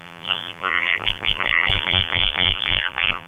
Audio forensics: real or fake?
fake